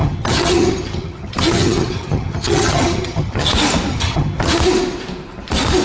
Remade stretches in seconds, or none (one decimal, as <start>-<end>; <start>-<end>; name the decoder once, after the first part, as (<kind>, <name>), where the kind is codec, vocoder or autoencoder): 0.0-3.5 (vocoder, HiFi-GAN); 3.9-4.5